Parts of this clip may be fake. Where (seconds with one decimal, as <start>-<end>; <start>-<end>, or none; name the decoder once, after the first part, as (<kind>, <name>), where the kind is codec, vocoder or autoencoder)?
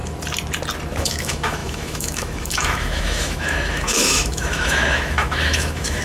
1.0-6.0 (autoencoder, DAC-VAE)